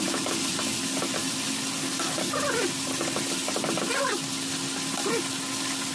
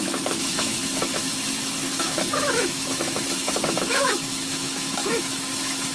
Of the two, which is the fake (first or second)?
second